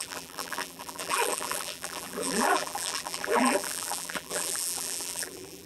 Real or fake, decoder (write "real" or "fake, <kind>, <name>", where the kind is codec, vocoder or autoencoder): fake, vocoder, BigVGAN v2